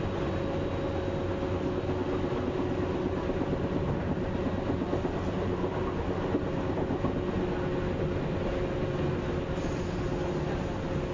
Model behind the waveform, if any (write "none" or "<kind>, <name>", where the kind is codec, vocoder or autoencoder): none